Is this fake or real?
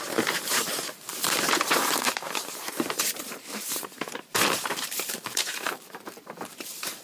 fake